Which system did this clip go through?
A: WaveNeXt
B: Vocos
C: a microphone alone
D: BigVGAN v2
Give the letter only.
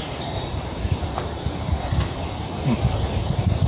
D